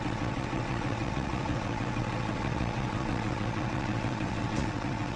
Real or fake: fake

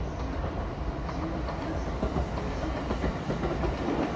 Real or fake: real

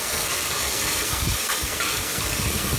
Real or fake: fake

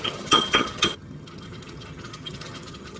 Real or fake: fake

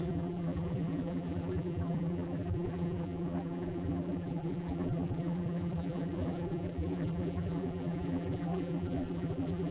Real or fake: fake